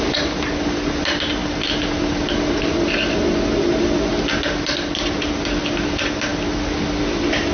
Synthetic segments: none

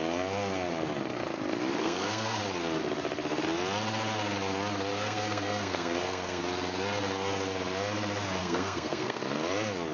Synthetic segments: 1.8-2.4 (codec, SNAC); 4.9-6.4; 8.4-9.2

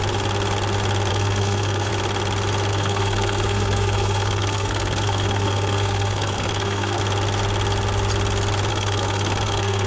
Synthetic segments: 1.1-1.9 (codec, SNAC); 2.7-7.0; 8.7-9.9

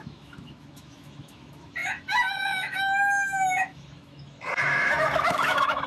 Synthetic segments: 0.0-5.9 (autoencoder, DAC-VAE)

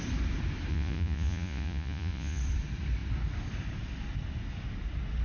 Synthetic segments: 0.7-2.4 (vocoder, Vocos)